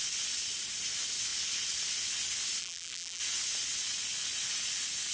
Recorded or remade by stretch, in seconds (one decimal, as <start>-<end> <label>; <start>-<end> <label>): 0.0-2.6 recorded; 2.6-3.2 remade; 3.2-5.1 recorded